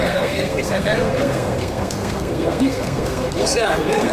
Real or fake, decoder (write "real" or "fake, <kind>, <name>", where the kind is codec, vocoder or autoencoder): fake, codec, SNAC